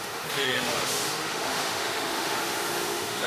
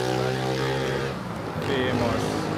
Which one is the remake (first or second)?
first